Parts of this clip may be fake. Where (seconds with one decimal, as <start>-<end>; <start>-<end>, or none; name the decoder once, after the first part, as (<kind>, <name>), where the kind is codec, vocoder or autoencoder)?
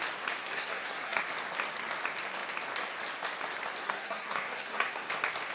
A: 0.4-1.2 (codec, SNAC); 3.8-5.1